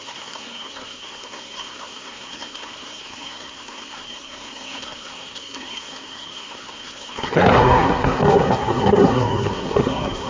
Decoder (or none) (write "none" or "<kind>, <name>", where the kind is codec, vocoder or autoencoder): codec, SNAC